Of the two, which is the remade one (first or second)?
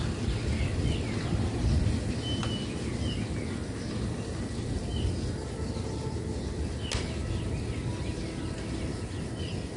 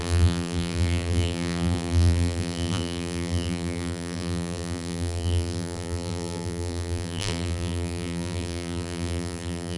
second